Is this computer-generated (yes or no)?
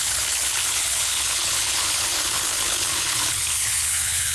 yes